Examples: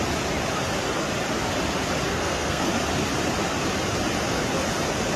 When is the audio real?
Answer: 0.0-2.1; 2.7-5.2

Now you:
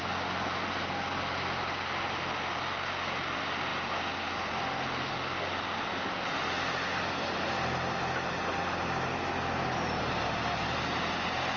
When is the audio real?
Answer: 0.0-11.6